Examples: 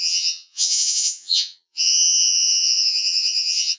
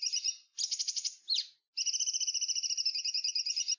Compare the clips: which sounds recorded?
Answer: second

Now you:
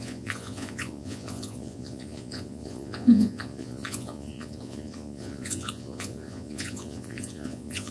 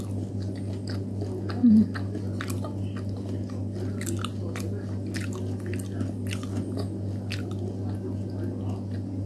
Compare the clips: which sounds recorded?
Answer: second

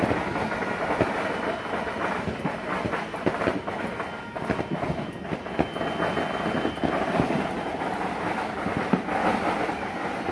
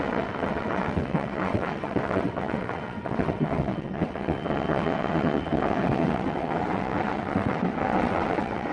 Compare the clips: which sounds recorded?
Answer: first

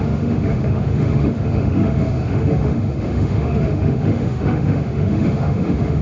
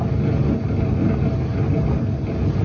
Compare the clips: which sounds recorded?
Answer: second